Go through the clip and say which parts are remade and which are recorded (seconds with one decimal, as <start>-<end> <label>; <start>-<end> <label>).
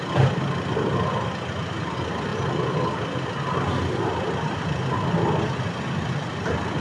0.0-6.8 recorded